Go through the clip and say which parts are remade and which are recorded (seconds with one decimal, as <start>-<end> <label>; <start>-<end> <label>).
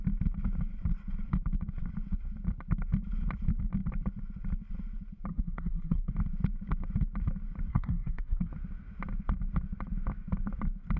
0.0-5.3 recorded; 5.3-6.1 remade; 6.1-7.7 recorded; 7.7-8.5 remade; 8.5-11.0 recorded